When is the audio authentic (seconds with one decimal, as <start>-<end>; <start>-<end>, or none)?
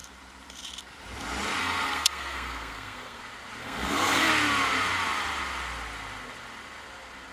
0.0-1.6; 3.2-3.6; 4.3-7.3